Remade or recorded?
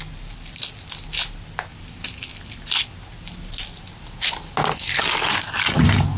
recorded